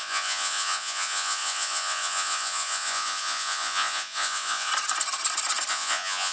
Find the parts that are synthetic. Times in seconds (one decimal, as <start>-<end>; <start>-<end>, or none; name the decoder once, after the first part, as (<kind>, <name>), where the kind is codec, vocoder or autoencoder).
0.0-4.7 (vocoder, Vocos); 5.7-6.3